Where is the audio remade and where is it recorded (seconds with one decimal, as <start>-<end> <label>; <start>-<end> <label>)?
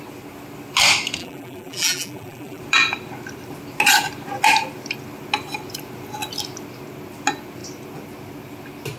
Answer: 0.0-1.2 recorded; 1.2-2.6 remade; 2.6-9.0 recorded